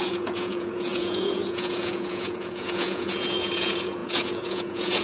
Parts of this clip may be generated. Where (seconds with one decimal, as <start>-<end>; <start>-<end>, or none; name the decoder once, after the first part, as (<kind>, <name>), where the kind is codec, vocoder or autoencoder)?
0.0-5.0 (vocoder, Vocos)